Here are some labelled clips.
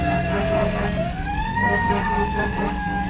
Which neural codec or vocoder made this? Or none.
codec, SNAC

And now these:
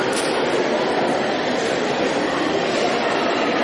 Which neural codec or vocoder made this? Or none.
vocoder, BigVGAN v2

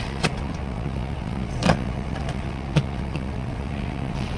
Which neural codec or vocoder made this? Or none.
vocoder, WaveNeXt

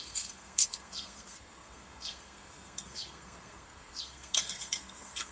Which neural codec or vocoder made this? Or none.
codec, SNAC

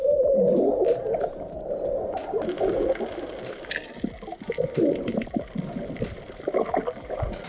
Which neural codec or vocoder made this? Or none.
none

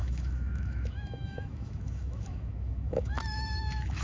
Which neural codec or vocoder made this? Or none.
autoencoder, DAC-VAE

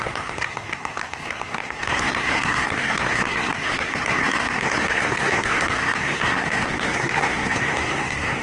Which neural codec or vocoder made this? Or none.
codec, SNAC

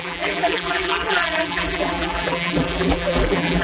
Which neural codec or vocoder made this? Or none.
vocoder, BigVGAN v2